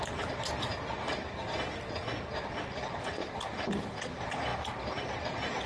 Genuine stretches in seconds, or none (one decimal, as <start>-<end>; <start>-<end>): 0.7-2.6; 3.2-3.8; 4.5-5.2